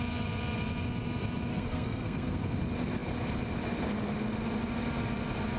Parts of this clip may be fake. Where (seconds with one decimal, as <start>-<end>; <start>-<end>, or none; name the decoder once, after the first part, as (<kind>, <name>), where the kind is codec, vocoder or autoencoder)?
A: 1.5-2.4 (codec, SNAC)